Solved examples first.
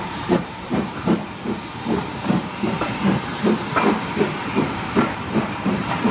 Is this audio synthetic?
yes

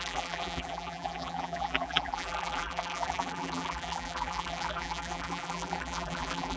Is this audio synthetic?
yes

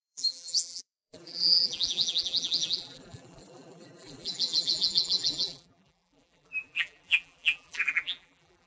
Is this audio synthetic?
yes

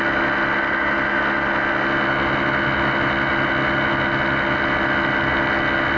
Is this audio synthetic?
no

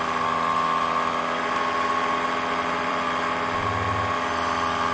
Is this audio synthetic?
yes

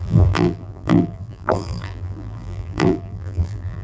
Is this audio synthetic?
yes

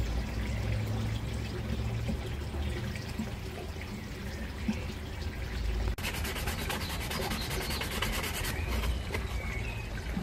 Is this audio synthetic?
no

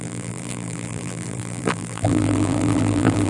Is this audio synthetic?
yes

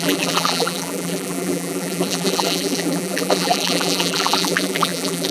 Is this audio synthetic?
yes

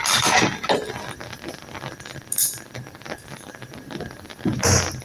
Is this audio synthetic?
no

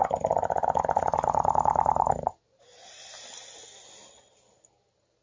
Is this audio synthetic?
no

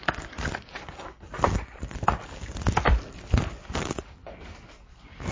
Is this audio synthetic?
yes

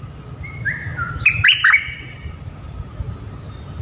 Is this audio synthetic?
no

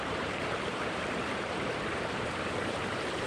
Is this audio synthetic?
yes